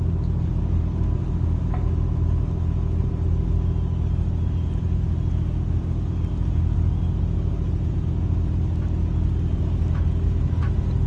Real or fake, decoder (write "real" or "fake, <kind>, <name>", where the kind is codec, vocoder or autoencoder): real